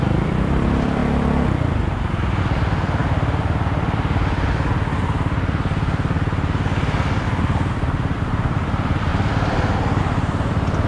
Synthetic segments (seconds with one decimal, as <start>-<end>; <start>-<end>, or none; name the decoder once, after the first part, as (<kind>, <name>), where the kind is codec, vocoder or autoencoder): 0.0-1.0 (vocoder, BigVGAN v2); 2.4-3.0; 7.2-9.1; 10.0-10.9